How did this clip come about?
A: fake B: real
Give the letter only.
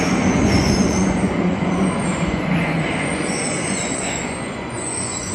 A